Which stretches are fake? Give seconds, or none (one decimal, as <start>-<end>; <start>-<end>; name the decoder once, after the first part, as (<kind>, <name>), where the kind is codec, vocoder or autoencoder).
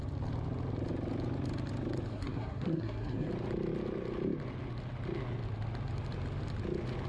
2.1-3.3 (codec, SNAC)